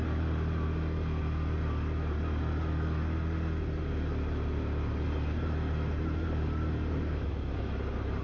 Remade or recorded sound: recorded